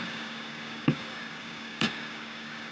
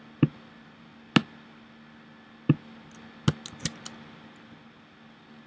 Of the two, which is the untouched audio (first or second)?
second